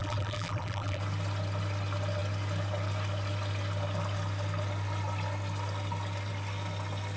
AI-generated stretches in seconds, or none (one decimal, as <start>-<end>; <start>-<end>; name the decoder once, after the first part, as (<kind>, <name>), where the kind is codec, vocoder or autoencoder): 0.0-1.0 (vocoder, BigVGAN v2)